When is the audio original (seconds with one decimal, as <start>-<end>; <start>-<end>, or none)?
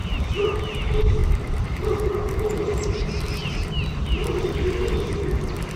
0.6-1.2; 2.3-4.2; 5.1-5.8